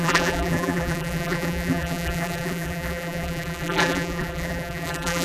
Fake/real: fake